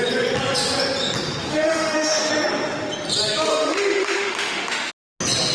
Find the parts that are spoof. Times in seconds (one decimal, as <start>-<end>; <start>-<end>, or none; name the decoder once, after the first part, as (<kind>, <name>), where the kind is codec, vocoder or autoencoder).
1.5-2.3 (autoencoder, DAC-VAE); 3.5-4.9